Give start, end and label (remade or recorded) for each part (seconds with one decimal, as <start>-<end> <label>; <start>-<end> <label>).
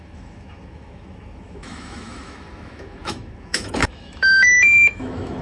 0.0-5.4 remade